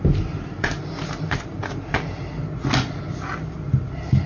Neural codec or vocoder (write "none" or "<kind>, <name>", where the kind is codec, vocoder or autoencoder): none